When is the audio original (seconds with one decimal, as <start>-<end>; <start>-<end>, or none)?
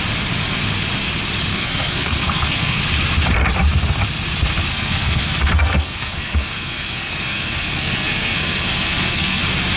0.0-1.5; 2.8-4.7; 9.4-9.8